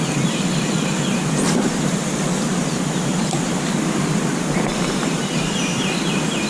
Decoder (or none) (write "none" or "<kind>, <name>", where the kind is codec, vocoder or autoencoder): vocoder, BigVGAN v2